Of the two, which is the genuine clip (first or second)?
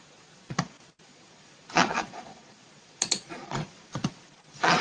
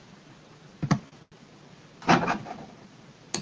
second